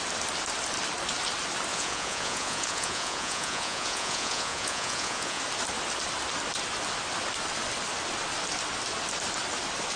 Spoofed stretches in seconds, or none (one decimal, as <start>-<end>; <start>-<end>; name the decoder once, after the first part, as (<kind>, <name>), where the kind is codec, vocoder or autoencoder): 1.7-5.4 (vocoder, Vocos)